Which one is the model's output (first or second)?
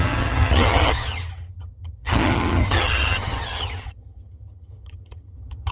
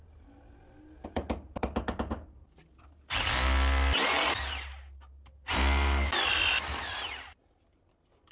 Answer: first